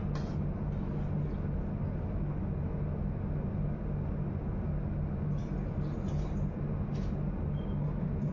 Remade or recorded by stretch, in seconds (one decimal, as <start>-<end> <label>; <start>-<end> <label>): 0.0-8.3 recorded